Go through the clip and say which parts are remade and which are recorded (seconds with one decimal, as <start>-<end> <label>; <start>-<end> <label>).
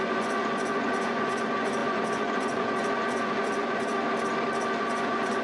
0.0-3.9 remade; 3.9-4.8 recorded; 4.8-5.4 remade